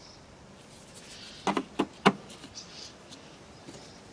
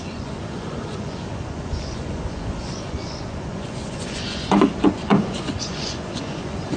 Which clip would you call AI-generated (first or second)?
second